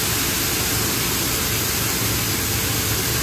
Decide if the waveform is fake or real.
real